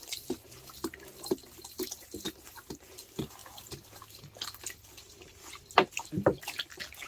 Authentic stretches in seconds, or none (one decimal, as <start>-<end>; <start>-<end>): 0.0-7.1